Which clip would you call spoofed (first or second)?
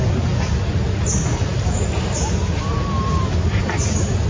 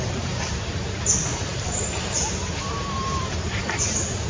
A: second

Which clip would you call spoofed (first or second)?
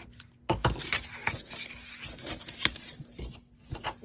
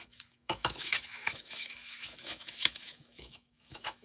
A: second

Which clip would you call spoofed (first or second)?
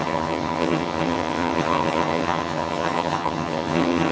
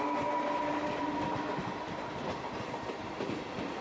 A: first